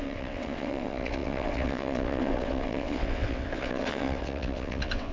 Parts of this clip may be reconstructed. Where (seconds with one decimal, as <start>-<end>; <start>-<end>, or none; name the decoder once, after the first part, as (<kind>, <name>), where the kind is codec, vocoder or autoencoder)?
0.0-5.1 (vocoder, WaveNeXt)